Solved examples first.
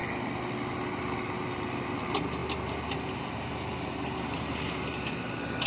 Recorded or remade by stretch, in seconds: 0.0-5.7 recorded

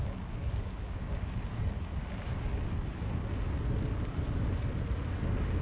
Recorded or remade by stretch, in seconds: 0.0-0.4 recorded; 0.4-1.1 remade; 1.1-5.6 recorded

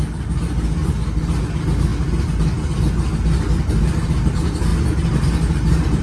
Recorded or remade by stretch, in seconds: 0.0-6.0 recorded

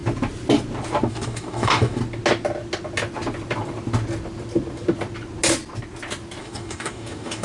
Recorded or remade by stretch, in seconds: 0.0-1.1 recorded; 1.1-2.0 remade; 2.0-6.4 recorded; 6.4-7.4 remade